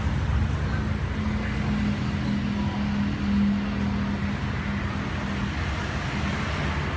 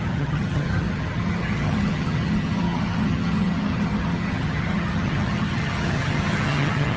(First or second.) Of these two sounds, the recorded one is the first